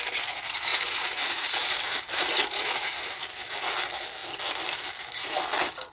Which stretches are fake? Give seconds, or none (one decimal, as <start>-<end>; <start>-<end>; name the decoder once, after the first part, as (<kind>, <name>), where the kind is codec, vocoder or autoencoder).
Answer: 0.7-3.1 (vocoder, BigVGAN v2)